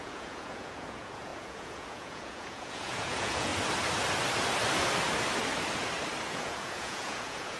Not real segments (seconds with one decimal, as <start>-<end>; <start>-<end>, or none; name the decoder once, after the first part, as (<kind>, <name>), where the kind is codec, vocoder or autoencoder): 0.0-3.5 (vocoder, Vocos); 6.3-7.6